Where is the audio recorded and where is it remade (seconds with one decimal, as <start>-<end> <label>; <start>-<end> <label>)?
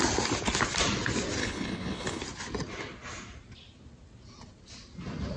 0.0-1.4 recorded; 1.4-2.2 remade; 2.2-5.4 recorded